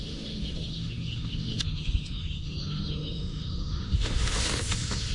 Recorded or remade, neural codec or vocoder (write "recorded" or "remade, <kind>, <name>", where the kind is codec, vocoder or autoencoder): remade, autoencoder, DAC-VAE